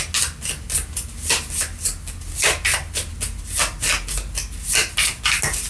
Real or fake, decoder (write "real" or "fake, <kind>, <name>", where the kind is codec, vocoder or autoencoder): real